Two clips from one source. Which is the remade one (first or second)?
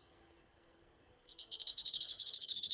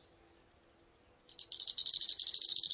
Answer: first